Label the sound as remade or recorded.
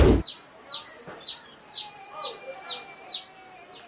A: recorded